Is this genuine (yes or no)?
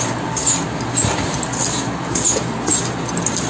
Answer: yes